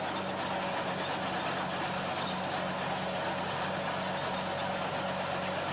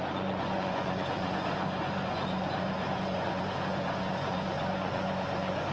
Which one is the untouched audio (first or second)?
first